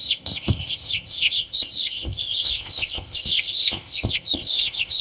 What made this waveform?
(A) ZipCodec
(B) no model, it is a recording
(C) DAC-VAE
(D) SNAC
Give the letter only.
A